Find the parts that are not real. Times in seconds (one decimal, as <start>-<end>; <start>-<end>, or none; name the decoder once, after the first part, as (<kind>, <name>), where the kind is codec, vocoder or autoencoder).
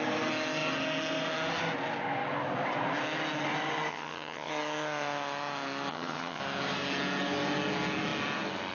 3.9-4.5 (vocoder, HiFi-GAN); 5.9-6.4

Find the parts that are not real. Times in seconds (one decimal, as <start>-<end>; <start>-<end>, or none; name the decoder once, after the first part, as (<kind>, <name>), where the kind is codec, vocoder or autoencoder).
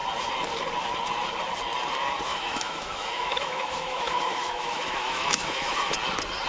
2.3-5.9 (autoencoder, DAC-VAE)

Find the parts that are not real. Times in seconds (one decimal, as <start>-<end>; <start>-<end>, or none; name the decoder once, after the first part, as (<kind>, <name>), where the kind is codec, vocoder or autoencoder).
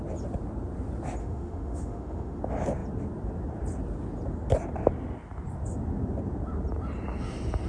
1.2-2.4 (autoencoder, DAC-VAE)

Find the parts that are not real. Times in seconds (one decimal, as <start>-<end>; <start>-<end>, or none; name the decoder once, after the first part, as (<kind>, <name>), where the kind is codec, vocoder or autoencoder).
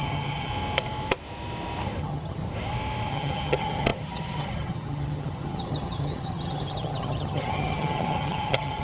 0.0-0.5 (vocoder, HiFi-GAN); 2.0-2.4; 3.1-8.8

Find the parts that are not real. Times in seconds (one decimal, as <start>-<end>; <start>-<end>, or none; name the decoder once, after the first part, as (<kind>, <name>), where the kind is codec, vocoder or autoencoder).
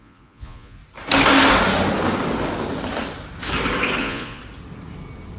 0.0-0.8 (vocoder, Vocos); 4.0-4.4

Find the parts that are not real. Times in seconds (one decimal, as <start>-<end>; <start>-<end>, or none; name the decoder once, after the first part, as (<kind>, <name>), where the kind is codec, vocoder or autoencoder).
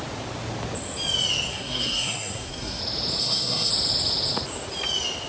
1.5-2.8 (codec, SNAC); 3.2-3.7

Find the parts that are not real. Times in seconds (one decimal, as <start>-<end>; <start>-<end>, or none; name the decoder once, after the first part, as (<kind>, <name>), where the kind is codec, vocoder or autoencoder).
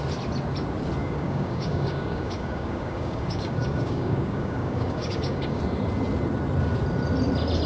1.0-5.6 (codec, DAC)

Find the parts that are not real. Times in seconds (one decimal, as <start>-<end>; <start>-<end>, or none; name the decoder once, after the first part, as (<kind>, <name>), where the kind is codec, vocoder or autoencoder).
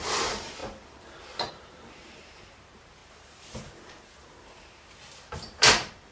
0.0-0.6 (vocoder, BigVGAN v2); 1.5-6.1